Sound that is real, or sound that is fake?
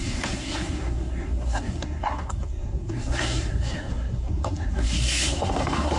fake